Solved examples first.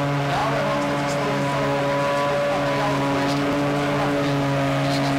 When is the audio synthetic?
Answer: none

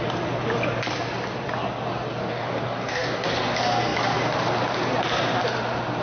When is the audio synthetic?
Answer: 2.2-3.3 (codec, DAC)

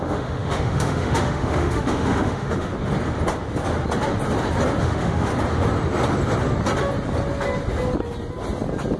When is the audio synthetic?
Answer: 0.0-2.7 (autoencoder, DAC-VAE); 4.8-5.3

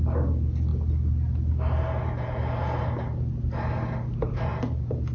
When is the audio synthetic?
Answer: none

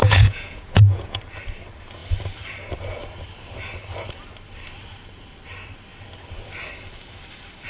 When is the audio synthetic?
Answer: 0.0-1.2 (vocoder, Vocos)

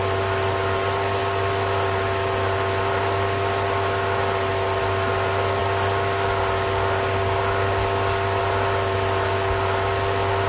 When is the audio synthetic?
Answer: none

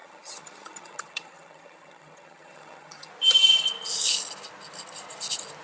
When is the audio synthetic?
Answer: 0.0-3.1 (vocoder, HiFi-GAN)

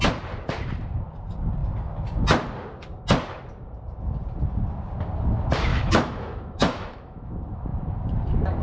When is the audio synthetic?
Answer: 5.7-7.3 (autoencoder, DAC-VAE)